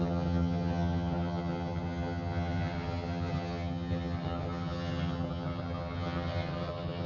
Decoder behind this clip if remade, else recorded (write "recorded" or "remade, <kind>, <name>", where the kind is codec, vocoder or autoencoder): remade, vocoder, HiFi-GAN